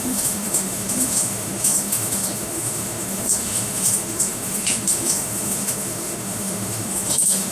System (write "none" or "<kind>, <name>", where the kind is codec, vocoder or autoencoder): autoencoder, DAC-VAE